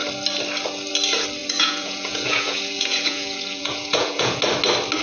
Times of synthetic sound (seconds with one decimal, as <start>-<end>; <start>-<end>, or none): 1.4-4.4